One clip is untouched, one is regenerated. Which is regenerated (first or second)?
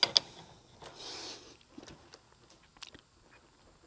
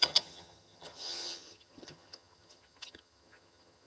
second